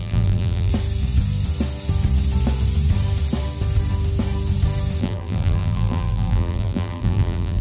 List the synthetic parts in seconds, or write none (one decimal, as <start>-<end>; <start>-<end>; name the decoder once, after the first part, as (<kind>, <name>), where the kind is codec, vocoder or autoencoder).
0.0-0.7 (vocoder, BigVGAN v2); 5.0-7.6